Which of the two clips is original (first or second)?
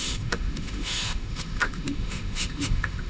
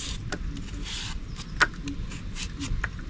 second